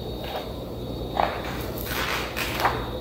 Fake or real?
fake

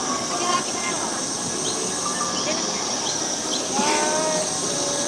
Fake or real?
real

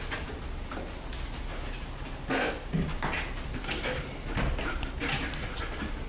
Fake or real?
real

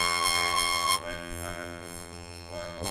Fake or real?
fake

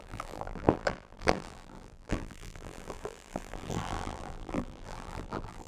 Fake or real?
fake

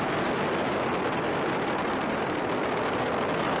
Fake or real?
real